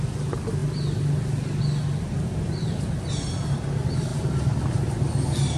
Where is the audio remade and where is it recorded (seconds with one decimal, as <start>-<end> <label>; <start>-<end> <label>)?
0.0-0.6 recorded; 0.6-1.6 remade; 1.6-4.1 recorded; 4.1-4.6 remade; 4.6-5.6 recorded